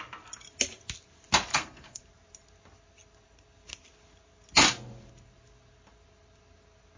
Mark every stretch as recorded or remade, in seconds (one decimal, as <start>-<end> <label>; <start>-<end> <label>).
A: 0.0-1.5 recorded; 1.5-2.0 remade; 2.0-7.0 recorded